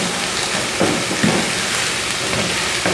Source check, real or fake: real